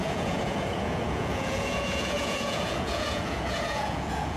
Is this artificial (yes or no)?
yes